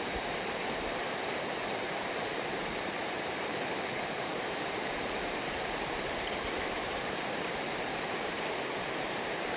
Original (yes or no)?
no